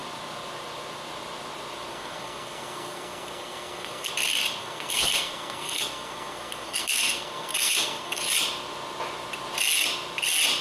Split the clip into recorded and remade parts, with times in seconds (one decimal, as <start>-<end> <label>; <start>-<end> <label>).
0.0-1.9 recorded; 1.9-4.1 remade; 4.1-4.6 recorded; 4.6-8.2 remade; 8.2-10.6 recorded